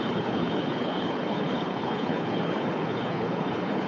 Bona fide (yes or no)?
no